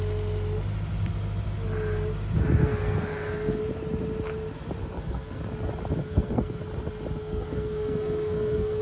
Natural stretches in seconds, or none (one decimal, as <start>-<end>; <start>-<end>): 0.0-2.6; 3.6-4.8; 5.4-6.0; 6.6-7.2